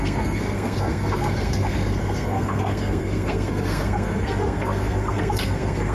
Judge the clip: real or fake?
fake